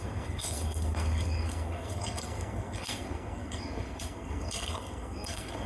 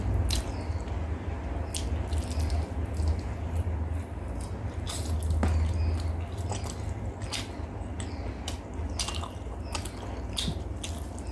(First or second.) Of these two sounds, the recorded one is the second